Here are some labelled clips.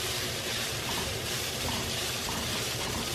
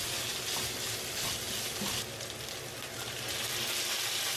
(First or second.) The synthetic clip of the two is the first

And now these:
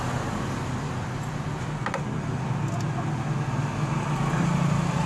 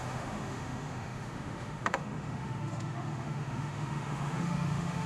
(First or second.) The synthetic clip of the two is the second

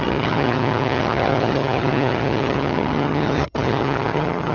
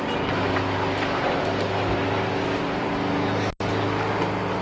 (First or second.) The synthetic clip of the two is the first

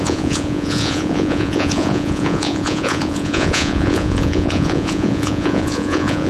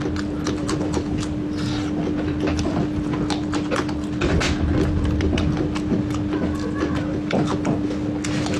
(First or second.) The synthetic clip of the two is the first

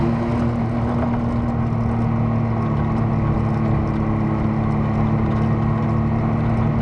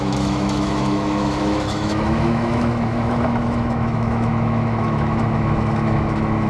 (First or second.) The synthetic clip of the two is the second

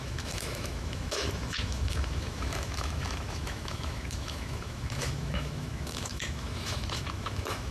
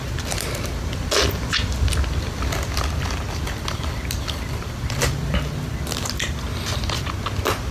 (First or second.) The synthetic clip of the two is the first